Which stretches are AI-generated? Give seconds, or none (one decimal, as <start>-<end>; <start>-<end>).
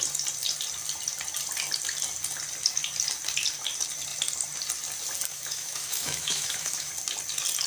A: 5.3-6.9